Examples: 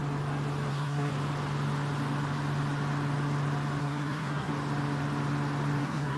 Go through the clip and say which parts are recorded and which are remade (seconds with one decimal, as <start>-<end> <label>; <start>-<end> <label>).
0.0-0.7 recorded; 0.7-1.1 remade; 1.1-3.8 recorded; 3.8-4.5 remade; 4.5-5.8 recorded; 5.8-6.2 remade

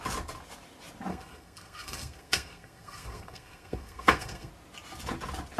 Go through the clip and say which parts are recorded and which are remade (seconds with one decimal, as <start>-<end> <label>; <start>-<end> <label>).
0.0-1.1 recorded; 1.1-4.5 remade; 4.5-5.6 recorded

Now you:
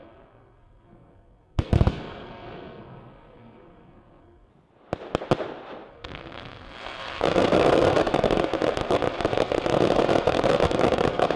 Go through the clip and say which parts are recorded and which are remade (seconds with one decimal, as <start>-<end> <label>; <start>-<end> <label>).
0.0-4.5 remade; 4.5-5.9 recorded; 5.9-11.4 remade

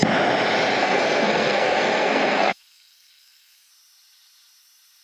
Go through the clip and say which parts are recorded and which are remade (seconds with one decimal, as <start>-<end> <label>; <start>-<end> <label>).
0.0-0.8 recorded; 0.8-3.7 remade; 3.7-5.0 recorded